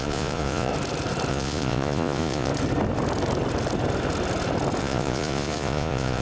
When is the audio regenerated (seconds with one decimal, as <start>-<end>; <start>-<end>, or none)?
0.0-0.7; 1.3-2.5; 4.8-6.2